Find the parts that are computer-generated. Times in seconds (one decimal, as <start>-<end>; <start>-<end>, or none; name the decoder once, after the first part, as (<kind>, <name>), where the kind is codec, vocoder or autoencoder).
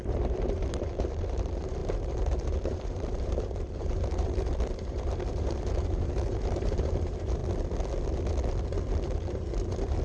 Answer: 0.0-7.4 (vocoder, BigVGAN v2); 9.3-10.0